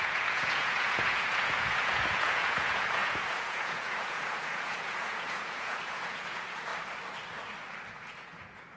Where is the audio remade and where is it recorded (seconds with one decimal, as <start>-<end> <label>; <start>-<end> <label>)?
0.0-6.7 remade; 6.7-7.9 recorded; 7.9-8.8 remade